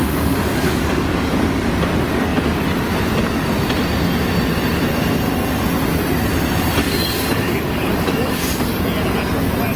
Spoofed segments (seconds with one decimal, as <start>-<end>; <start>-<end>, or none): 0.0-1.7; 6.8-8.8